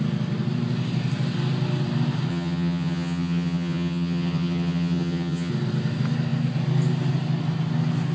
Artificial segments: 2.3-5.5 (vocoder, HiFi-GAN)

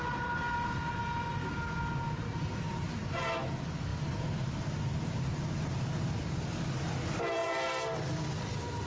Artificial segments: none